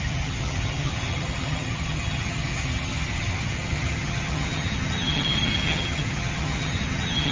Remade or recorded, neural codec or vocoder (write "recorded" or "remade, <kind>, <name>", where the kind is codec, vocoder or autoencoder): remade, vocoder, HiFi-GAN